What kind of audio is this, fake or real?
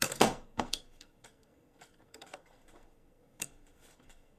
fake